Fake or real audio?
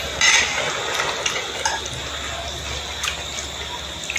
real